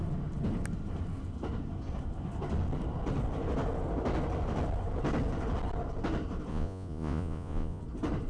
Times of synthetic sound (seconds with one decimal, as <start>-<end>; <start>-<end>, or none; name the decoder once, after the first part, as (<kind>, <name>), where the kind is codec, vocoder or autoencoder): 6.5-7.8 (vocoder, Vocos)